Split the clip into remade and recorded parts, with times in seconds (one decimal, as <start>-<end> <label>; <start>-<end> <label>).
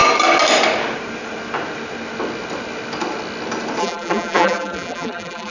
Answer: 0.0-3.8 recorded; 3.8-5.5 remade